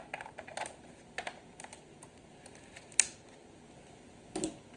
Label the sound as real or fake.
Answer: real